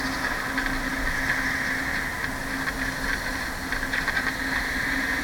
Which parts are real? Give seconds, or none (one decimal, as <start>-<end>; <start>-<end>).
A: 0.0-5.2